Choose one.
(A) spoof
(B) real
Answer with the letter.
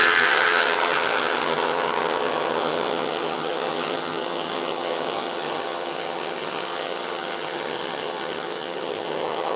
A